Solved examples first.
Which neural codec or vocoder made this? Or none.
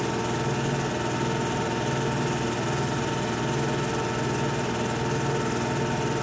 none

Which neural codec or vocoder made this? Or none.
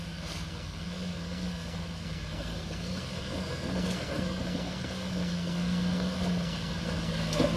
codec, SNAC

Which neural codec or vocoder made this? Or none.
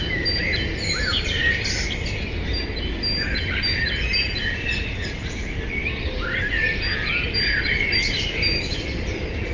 none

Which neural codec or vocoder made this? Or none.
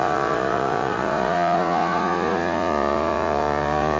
vocoder, Vocos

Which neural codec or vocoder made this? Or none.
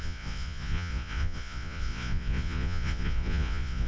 vocoder, Vocos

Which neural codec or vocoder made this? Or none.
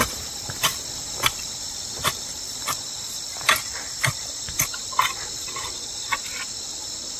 vocoder, BigVGAN v2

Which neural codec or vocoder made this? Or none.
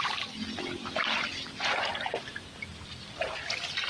vocoder, BigVGAN v2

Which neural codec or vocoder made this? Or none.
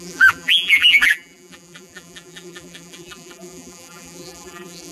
vocoder, BigVGAN v2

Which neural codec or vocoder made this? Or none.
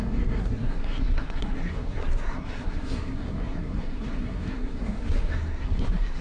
codec, SNAC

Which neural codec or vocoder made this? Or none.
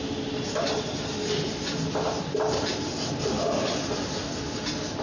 none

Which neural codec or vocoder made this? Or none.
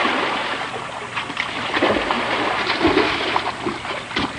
none